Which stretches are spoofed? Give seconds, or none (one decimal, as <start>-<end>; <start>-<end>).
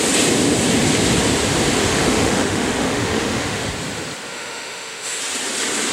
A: 1.8-3.7; 4.3-5.2